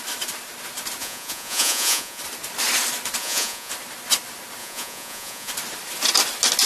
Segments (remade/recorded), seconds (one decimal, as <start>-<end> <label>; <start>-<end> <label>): 0.0-1.0 recorded; 1.0-2.2 remade; 2.2-3.2 recorded; 3.2-3.7 remade; 3.7-4.6 recorded; 4.6-5.5 remade; 5.5-6.7 recorded